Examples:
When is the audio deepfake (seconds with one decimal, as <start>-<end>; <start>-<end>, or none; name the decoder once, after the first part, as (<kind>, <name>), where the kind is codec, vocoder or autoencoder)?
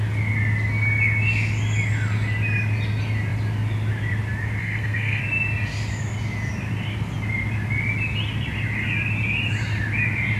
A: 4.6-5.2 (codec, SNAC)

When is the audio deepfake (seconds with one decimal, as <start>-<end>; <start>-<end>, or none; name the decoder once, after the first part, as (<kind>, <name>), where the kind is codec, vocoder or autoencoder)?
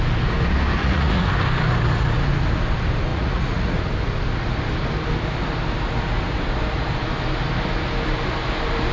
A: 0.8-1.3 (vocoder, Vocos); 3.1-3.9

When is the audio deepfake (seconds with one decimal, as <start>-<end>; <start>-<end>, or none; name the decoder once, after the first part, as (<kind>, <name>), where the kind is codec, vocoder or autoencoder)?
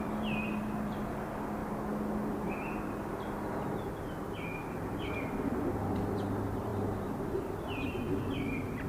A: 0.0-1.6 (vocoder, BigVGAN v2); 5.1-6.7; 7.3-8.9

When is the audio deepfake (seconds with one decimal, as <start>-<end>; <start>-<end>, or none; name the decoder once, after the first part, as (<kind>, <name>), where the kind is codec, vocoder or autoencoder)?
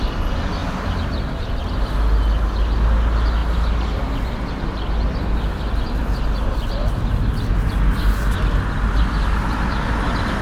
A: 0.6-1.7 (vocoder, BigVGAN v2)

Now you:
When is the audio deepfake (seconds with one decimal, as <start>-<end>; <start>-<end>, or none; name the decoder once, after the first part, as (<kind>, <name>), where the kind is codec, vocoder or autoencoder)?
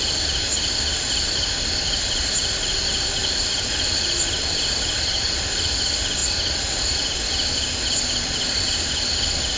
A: none